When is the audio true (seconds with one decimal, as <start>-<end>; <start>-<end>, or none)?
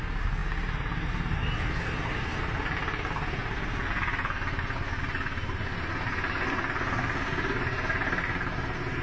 0.0-9.0